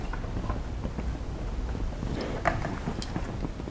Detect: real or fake real